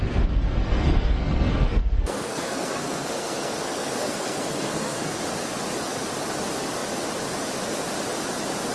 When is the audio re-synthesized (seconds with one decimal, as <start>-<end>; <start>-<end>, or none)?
0.0-5.2